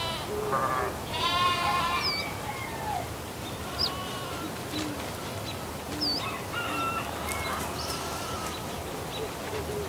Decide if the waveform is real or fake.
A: real